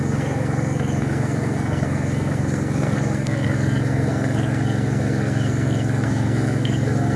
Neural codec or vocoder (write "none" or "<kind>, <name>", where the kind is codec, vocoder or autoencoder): codec, SNAC